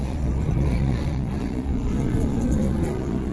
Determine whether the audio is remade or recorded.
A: remade